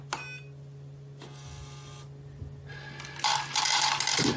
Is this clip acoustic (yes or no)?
yes